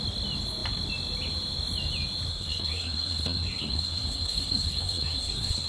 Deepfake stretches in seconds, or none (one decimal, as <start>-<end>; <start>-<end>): 2.3-5.7